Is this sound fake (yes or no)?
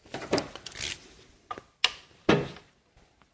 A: no